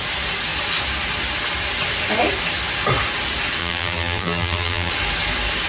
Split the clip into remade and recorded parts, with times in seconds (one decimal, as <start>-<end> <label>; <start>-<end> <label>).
0.0-3.6 recorded; 3.6-4.9 remade; 4.9-5.7 recorded